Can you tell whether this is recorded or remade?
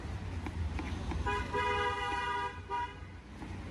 recorded